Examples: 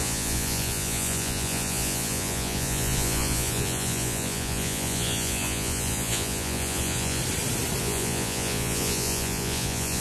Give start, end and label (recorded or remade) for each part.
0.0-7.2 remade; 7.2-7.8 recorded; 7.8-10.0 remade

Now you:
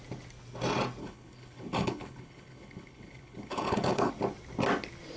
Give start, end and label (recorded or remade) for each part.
0.0-1.0 recorded; 1.0-4.1 remade; 4.1-5.2 recorded

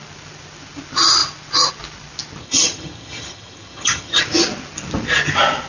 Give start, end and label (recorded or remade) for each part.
0.0-2.4 recorded; 2.4-4.2 remade; 4.2-5.7 recorded

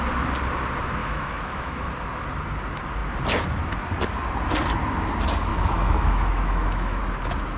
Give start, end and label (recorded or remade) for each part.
0.0-1.0 recorded; 1.0-1.8 remade; 1.8-5.5 recorded; 5.5-7.0 remade; 7.0-7.6 recorded

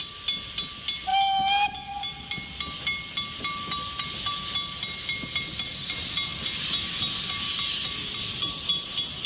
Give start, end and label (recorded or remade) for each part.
0.0-9.3 recorded